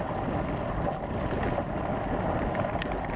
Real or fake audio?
real